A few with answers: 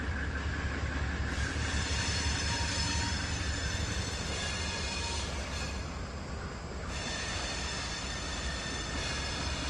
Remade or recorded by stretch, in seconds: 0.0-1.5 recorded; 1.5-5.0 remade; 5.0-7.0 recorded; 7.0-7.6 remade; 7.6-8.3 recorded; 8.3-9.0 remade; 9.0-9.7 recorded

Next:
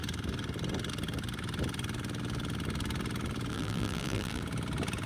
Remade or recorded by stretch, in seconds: 0.0-3.5 recorded; 3.5-4.4 remade; 4.4-5.1 recorded